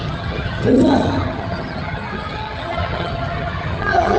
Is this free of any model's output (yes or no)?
no